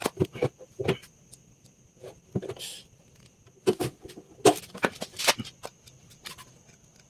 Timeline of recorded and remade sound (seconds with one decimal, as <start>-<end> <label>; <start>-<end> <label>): 0.0-7.1 recorded